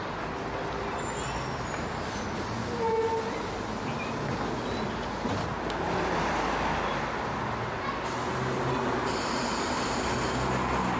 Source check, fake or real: real